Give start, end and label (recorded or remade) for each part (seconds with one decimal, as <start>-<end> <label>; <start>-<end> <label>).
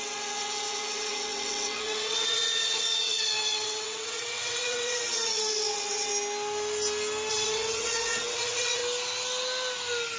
0.0-6.1 remade; 6.1-7.3 recorded; 7.3-8.8 remade; 8.8-10.2 recorded